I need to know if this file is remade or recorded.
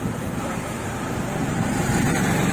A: remade